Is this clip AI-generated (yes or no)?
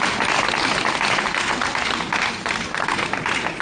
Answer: no